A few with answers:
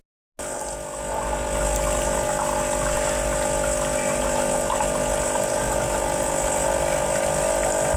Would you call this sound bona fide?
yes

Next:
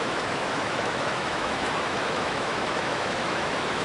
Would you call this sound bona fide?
no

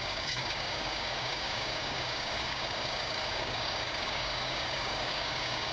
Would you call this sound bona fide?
no